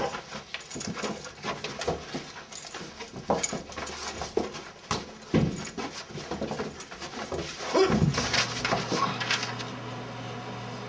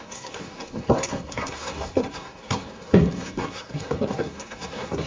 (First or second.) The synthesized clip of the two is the second